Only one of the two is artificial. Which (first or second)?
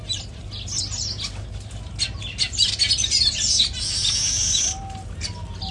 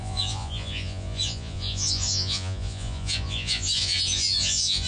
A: second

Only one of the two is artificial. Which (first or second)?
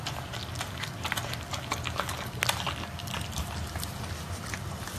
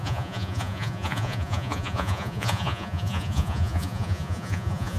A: second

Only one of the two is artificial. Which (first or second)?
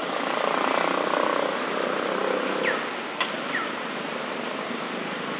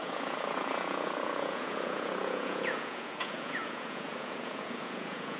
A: second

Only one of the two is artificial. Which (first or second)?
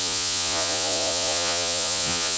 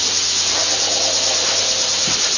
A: first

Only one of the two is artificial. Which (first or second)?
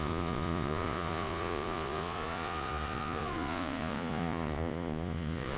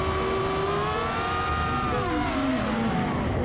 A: first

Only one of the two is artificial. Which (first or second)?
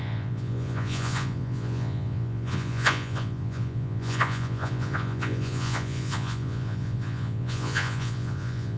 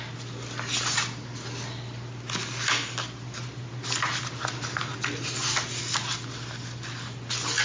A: first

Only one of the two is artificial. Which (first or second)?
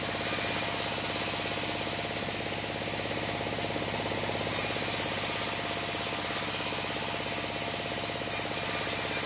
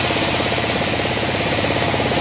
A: second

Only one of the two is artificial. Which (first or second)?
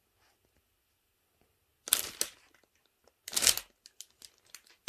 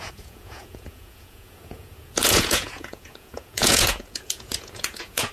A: second